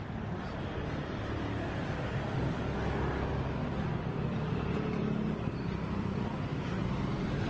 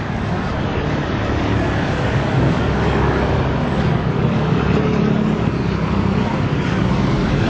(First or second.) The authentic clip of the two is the first